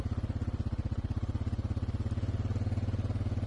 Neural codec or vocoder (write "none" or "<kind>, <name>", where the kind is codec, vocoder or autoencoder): none